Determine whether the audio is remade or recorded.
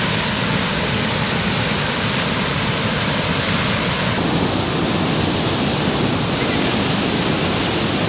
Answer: recorded